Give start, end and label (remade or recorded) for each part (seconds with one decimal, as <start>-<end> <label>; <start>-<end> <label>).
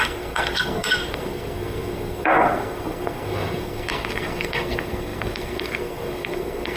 0.0-6.8 remade